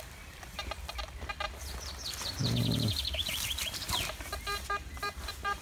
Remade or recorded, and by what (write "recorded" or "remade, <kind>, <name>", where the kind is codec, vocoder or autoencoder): remade, vocoder, BigVGAN v2